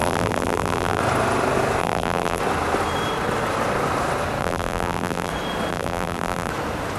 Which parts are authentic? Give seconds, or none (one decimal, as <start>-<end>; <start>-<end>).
1.0-1.8; 2.4-4.4; 5.3-5.7; 6.5-7.0